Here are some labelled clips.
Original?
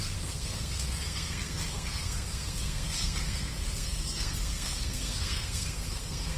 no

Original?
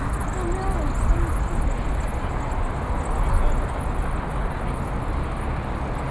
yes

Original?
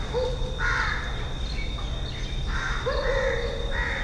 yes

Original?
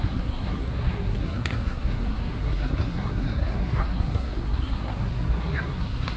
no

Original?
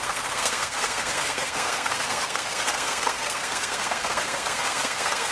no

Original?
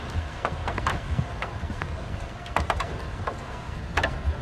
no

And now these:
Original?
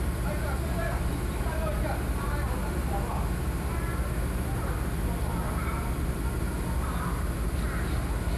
yes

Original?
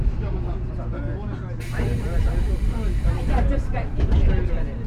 yes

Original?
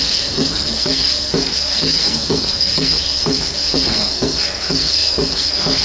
no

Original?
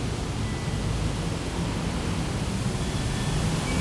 yes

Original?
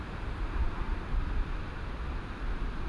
yes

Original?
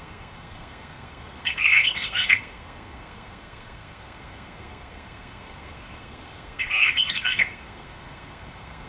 no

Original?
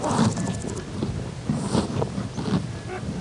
yes